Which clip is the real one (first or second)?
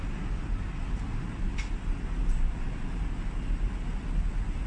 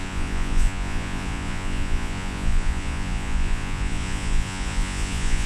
first